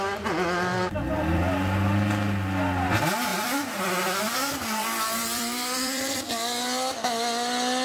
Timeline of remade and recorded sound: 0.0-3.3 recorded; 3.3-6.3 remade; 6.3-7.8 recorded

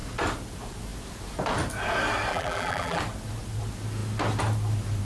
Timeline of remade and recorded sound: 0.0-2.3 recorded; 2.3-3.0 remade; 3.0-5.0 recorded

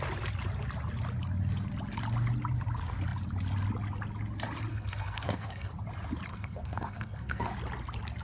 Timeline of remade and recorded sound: 0.0-4.7 recorded; 4.7-5.7 remade; 5.7-6.3 recorded; 6.3-7.5 remade; 7.5-8.2 recorded

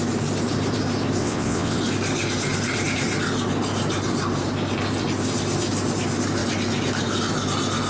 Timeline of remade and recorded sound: 0.0-1.2 recorded; 1.2-1.8 remade; 1.8-7.9 recorded

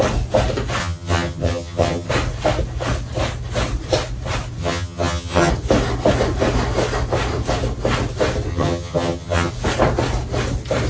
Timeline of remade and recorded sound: 0.0-0.8 recorded; 0.8-2.1 remade; 2.1-4.6 recorded; 4.6-5.5 remade; 5.5-8.5 recorded; 8.5-9.5 remade; 9.5-10.9 recorded

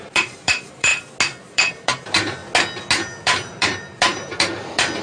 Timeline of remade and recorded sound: 0.0-0.9 remade; 0.9-1.4 recorded; 1.4-2.4 remade; 2.4-3.2 recorded; 3.2-5.0 remade